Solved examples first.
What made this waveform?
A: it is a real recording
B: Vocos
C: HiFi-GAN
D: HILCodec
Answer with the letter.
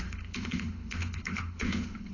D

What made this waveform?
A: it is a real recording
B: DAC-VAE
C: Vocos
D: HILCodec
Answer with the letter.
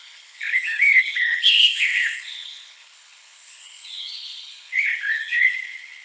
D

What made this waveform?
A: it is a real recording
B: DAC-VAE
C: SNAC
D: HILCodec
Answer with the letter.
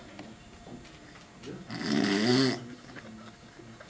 A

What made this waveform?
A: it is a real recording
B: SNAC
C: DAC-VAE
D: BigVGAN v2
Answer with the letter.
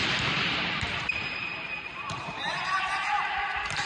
D